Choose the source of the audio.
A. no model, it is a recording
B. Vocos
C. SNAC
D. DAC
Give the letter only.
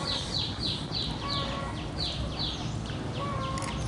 A